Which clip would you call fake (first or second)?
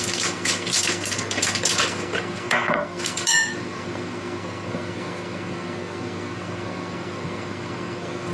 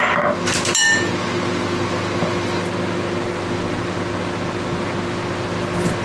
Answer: first